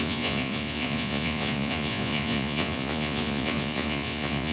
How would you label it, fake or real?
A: fake